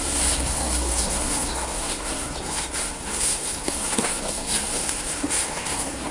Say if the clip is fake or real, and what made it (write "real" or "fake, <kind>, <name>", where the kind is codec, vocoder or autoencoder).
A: fake, codec, SNAC